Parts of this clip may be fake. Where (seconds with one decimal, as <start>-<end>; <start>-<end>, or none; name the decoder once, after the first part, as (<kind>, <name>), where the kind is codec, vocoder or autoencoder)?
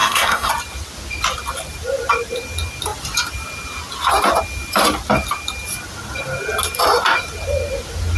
0.0-0.5 (codec, SNAC)